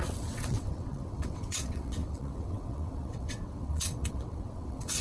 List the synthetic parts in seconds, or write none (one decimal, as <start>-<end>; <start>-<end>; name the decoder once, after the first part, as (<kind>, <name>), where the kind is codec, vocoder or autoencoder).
0.0-5.0 (vocoder, WaveNeXt)